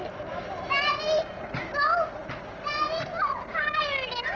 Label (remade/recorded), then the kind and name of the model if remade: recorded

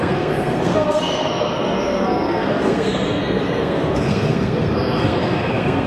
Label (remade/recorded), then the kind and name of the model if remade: remade, codec, SNAC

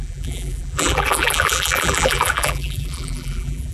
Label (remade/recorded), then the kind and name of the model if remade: remade, vocoder, BigVGAN v2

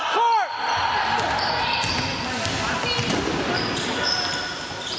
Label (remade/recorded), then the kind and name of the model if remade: recorded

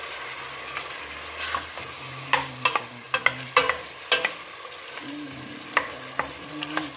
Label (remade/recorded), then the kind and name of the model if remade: recorded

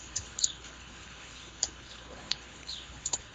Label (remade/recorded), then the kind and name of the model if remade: remade, codec, HILCodec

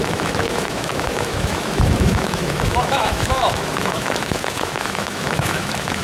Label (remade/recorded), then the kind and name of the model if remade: remade, autoencoder, DAC-VAE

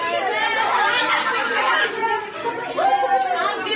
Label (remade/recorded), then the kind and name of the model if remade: recorded